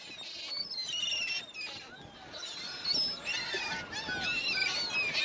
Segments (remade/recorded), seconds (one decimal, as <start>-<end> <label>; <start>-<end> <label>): 0.0-5.2 recorded